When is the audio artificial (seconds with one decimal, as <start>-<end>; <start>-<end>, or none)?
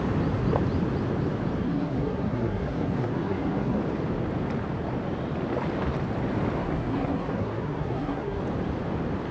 1.6-3.8; 6.6-8.4